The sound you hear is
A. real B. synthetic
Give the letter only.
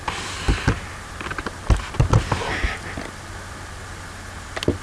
A